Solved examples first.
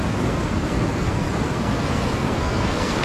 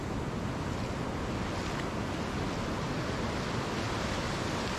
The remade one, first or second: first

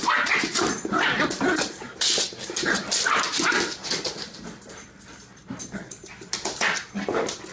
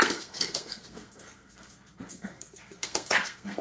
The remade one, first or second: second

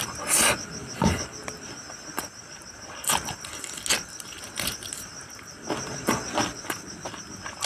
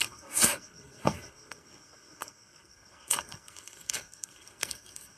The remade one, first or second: second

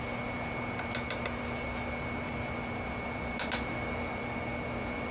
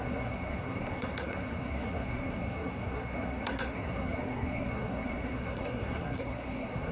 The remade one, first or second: second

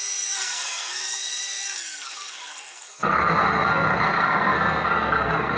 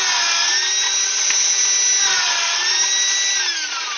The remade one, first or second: first